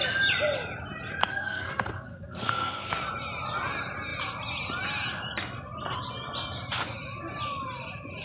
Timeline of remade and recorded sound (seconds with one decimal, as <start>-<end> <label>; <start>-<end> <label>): 0.0-1.2 recorded; 1.2-2.9 remade; 2.9-8.2 recorded